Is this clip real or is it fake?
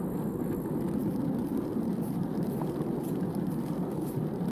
real